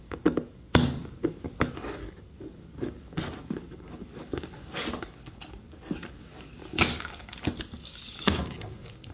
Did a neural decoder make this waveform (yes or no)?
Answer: yes